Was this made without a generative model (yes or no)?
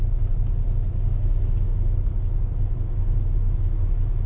yes